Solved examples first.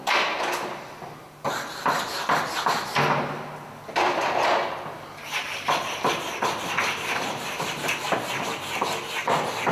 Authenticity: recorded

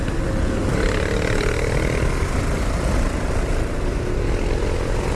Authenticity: recorded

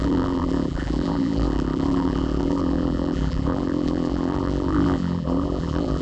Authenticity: remade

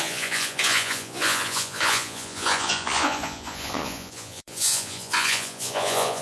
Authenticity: remade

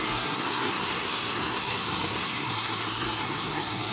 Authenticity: remade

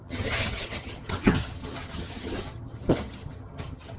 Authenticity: remade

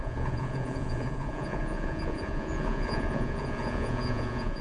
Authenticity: remade